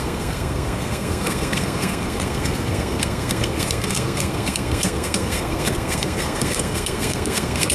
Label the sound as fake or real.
fake